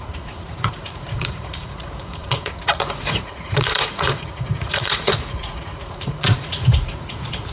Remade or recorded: remade